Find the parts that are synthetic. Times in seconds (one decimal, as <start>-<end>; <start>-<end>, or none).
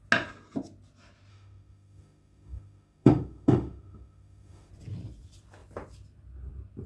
1.3-4.7